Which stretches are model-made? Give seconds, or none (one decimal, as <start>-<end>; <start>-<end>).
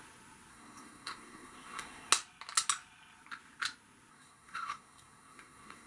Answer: 0.5-2.1; 4.1-5.9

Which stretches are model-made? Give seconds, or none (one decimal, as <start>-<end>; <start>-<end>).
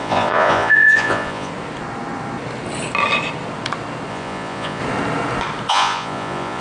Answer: 0.0-1.5; 4.1-4.8; 5.7-6.6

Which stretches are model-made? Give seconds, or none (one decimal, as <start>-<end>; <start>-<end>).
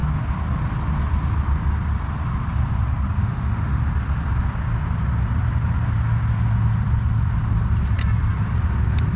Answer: 3.2-3.8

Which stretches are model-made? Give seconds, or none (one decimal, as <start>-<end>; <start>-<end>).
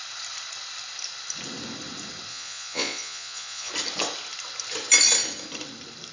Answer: 2.3-3.7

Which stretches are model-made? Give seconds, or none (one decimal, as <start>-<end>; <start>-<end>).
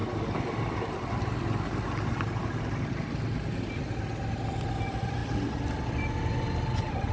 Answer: none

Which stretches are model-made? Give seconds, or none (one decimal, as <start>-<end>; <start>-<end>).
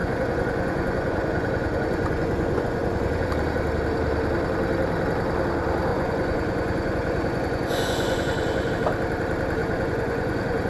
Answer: 0.0-3.3; 5.9-8.7; 9.6-10.7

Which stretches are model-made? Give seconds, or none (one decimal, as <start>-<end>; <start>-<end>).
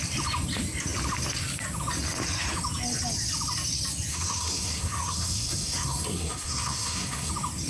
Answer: 4.1-7.3